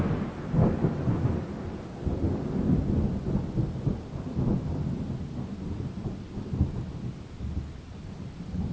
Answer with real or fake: real